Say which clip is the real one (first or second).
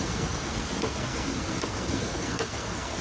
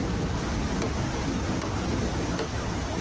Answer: second